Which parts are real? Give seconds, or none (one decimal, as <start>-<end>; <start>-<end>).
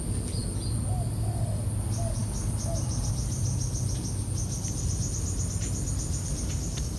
0.0-7.0